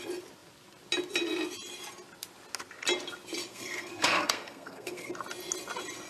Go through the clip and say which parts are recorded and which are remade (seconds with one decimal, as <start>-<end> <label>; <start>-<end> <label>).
0.0-3.5 recorded; 3.5-5.1 remade; 5.1-6.1 recorded